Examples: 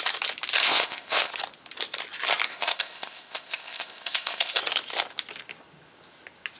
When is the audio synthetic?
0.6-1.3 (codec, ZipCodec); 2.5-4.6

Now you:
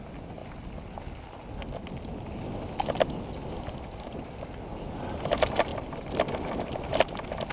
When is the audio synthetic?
none

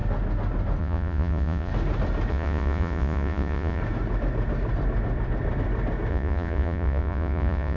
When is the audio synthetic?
0.8-1.7 (vocoder, Vocos); 2.3-3.8; 6.1-7.8

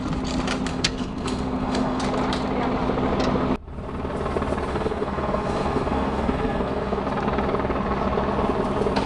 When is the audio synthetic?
0.7-2.0 (codec, SNAC); 4.7-7.0

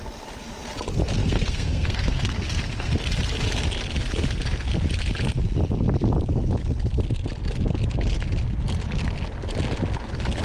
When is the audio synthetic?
1.2-2.9 (codec, SNAC)

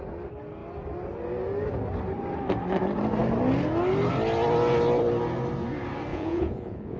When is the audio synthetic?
6.1-7.0 (vocoder, Vocos)

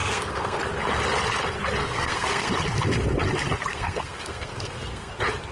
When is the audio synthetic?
0.0-0.6 (codec, SNAC); 1.8-2.5; 3.7-5.1